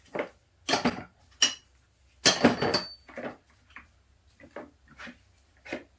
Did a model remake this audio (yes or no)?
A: no